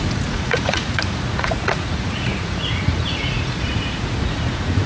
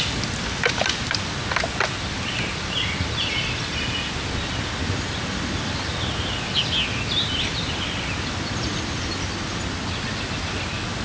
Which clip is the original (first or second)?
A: second